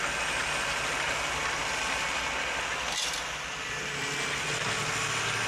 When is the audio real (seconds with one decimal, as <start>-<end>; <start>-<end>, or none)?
0.0-5.5